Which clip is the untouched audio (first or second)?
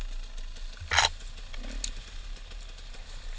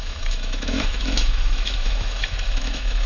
first